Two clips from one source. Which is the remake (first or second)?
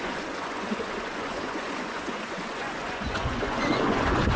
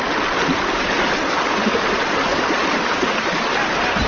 first